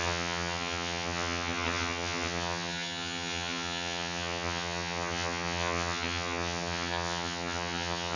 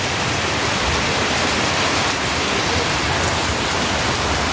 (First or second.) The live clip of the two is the second